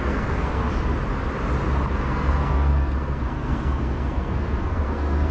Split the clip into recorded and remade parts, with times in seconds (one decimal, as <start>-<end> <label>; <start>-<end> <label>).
0.0-0.7 remade; 0.7-1.9 recorded; 1.9-5.3 remade